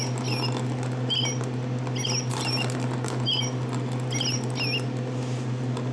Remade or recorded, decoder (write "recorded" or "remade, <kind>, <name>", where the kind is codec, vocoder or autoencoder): recorded